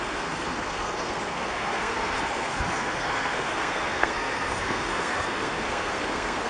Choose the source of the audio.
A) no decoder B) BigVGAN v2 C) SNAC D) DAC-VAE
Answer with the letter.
C